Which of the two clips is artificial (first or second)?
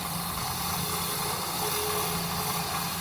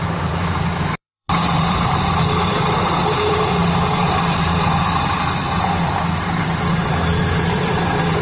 second